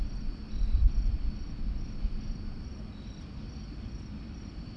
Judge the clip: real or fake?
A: real